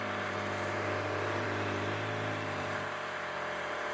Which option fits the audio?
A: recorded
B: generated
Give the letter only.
B